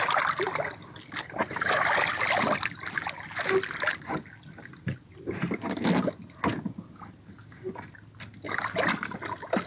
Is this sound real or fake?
real